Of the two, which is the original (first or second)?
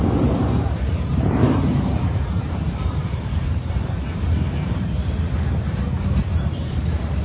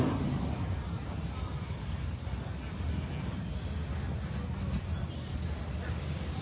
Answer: second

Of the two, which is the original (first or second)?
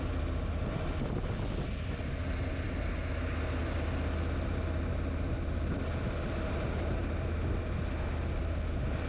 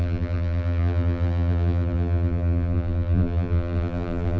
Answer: first